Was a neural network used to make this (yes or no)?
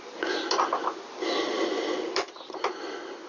no